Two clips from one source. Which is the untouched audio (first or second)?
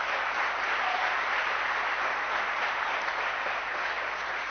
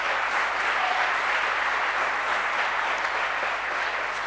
second